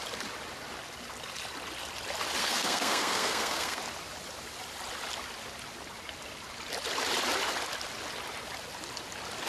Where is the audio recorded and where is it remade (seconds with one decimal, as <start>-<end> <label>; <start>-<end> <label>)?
0.0-2.4 recorded; 2.4-3.8 remade; 3.8-9.5 recorded